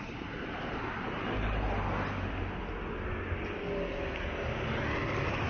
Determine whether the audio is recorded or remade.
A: recorded